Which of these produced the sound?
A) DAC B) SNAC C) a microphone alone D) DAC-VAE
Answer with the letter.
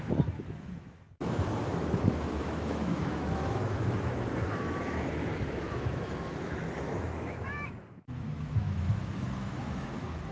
D